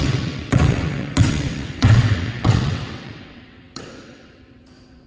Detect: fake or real fake